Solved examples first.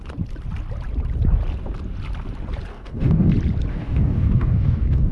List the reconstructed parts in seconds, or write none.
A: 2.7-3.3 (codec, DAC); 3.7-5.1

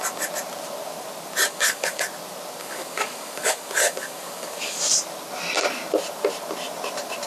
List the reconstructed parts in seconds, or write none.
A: 1.4-2.0 (codec, DAC); 2.6-4.8

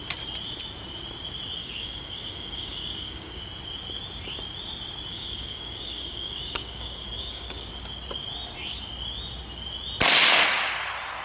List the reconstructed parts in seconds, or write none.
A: 1.6-3.4 (codec, DAC); 5.1-7.7